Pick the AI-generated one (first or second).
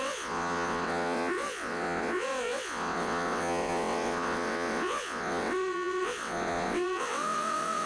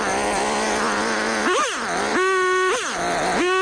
first